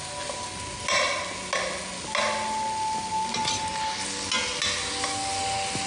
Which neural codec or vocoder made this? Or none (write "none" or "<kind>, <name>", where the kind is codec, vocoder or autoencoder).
none